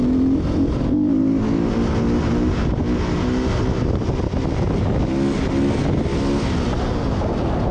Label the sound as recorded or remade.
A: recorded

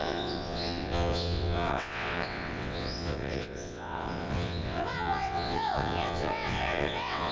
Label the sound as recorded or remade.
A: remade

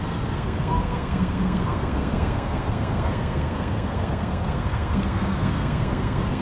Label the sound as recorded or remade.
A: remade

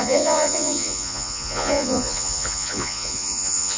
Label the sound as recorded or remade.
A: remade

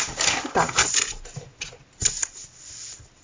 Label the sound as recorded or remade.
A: recorded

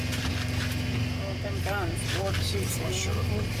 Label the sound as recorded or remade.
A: recorded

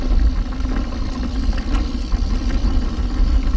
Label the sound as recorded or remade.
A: recorded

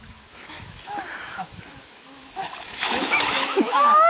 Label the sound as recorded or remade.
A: remade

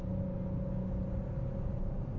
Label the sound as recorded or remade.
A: recorded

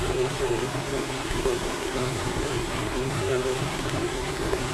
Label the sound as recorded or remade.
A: remade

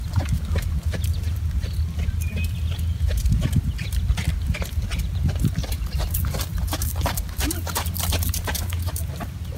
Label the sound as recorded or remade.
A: recorded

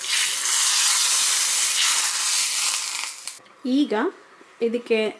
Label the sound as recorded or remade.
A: recorded